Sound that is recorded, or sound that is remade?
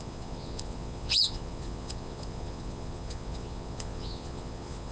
remade